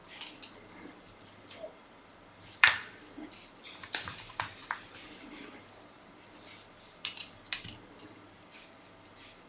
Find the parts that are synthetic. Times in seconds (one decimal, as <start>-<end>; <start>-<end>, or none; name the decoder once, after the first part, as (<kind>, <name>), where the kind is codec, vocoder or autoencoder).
0.0-9.5 (vocoder, BigVGAN v2)